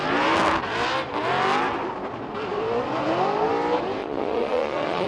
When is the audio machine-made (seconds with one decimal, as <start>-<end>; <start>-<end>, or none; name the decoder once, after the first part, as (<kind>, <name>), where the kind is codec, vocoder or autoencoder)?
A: 4.0-5.1 (vocoder, Vocos)